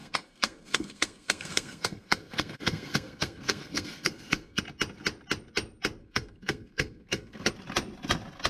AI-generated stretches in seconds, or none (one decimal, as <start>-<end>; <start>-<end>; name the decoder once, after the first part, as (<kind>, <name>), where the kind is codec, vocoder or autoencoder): 0.0-4.6 (codec, SNAC); 6.0-7.5